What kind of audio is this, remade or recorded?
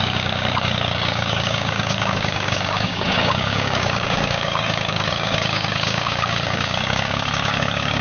remade